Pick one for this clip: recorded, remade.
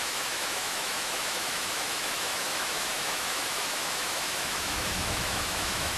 remade